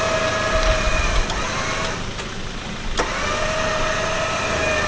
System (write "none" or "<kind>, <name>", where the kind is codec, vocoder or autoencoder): none